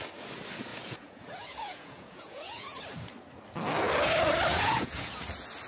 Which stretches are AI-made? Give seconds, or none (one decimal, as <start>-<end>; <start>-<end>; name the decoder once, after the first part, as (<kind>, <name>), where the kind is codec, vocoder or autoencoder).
0.7-2.8 (vocoder, Vocos); 4.5-5.2